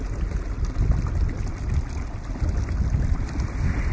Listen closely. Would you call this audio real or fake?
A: real